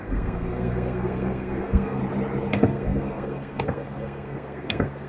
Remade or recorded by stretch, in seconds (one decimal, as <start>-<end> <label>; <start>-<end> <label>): 0.0-2.0 remade; 2.0-2.5 recorded; 2.5-5.1 remade